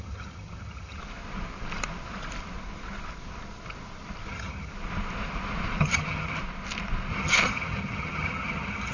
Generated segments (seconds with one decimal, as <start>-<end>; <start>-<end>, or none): 0.0-1.0; 4.3-4.7; 5.8-6.4; 7.1-8.9